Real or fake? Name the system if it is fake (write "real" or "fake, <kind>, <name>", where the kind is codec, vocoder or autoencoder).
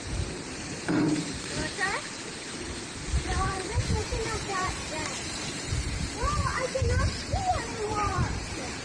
fake, vocoder, BigVGAN v2